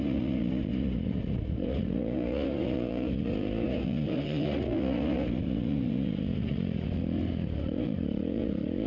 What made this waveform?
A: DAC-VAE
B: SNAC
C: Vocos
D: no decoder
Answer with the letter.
C